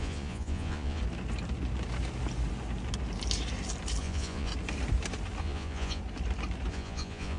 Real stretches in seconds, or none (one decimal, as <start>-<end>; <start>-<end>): 1.0-4.0; 4.5-5.4; 6.0-6.7